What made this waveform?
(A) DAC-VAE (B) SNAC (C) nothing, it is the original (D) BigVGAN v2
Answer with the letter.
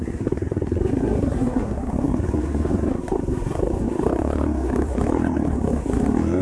B